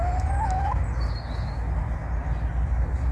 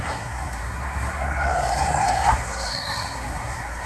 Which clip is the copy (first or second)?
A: second